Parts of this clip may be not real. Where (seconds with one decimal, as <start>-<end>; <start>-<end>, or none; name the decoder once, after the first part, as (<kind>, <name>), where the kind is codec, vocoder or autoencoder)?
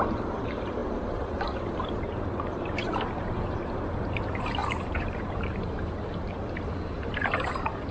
0.0-7.9 (vocoder, BigVGAN v2)